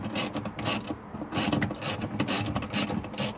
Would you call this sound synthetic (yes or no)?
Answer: no